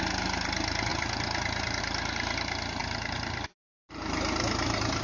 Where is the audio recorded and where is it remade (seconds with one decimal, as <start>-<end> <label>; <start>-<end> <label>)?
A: 0.0-5.0 recorded